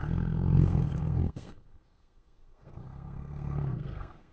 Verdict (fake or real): fake